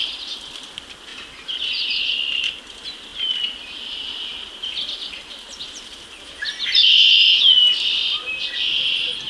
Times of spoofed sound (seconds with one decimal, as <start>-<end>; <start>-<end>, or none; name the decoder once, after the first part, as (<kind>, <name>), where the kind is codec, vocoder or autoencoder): 0.0-0.7 (vocoder, BigVGAN v2); 1.1-2.6; 3.1-7.1